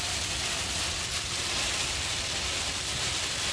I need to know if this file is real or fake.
real